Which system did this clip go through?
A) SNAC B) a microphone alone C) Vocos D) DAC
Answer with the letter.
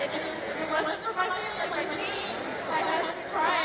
B